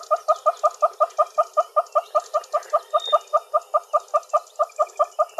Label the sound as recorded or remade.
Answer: recorded